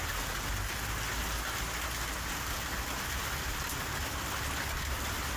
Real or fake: real